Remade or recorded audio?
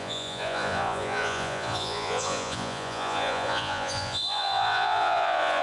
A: remade